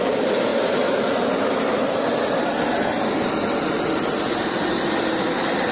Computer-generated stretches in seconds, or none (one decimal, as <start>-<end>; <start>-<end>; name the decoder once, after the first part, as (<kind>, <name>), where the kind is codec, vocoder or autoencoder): none